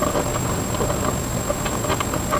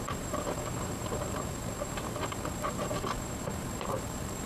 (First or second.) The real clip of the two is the first